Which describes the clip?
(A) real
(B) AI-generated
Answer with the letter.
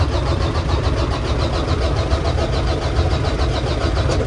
A